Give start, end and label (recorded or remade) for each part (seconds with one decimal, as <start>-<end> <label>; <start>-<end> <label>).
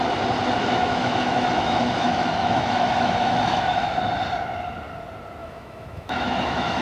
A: 0.0-0.6 recorded; 0.6-4.0 remade; 4.0-5.4 recorded; 5.4-6.8 remade